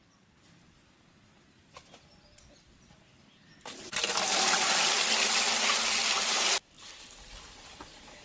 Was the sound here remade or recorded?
recorded